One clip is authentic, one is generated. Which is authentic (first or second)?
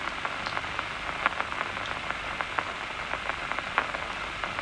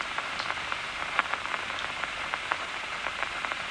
first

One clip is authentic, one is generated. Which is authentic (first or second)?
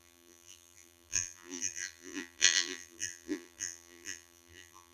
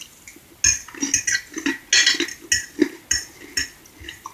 second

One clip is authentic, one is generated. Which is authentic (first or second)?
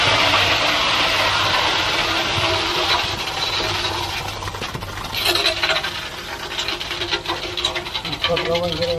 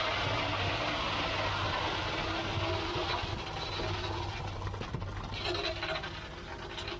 second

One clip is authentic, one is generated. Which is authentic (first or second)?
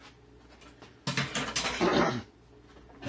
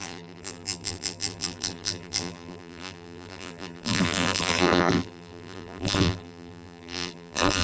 first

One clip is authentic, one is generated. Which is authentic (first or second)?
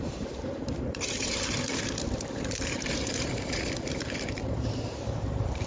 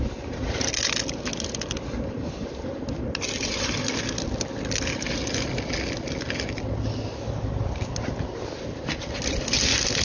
second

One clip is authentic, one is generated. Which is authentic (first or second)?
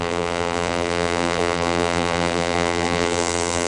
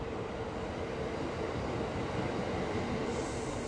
second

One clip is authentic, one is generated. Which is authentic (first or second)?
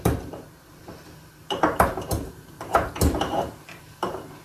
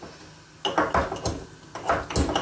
second